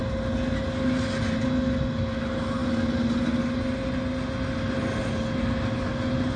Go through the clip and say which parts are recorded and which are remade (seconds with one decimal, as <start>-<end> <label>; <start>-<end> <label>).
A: 0.0-6.4 recorded